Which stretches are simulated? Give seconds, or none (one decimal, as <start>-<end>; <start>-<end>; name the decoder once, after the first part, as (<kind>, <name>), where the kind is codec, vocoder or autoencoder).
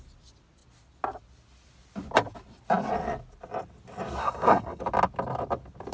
4.2-4.8 (codec, SNAC)